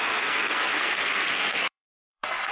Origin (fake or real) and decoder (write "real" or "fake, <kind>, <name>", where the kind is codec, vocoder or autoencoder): fake, codec, SNAC